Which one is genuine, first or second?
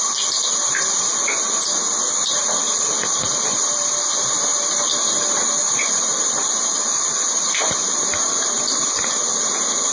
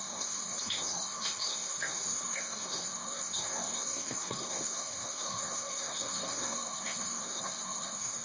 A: first